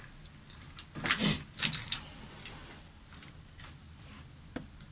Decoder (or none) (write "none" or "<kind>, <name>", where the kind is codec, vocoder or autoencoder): none